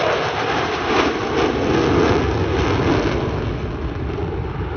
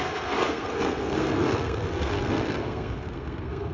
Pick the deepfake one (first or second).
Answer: second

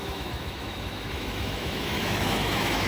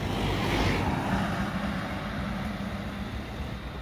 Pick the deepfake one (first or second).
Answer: first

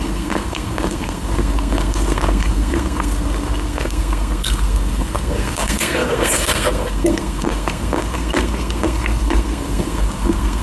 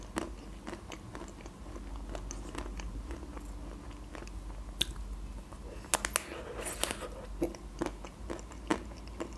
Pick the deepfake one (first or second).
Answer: first